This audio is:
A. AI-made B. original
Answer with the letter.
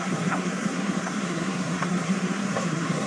A